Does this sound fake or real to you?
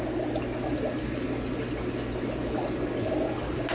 real